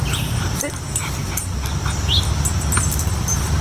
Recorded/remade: recorded